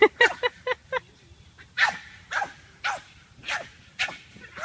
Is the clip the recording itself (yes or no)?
no